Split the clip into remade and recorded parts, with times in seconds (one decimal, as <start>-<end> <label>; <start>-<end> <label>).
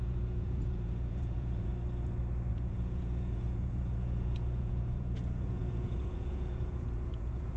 0.0-1.7 remade; 1.7-2.5 recorded; 2.5-7.6 remade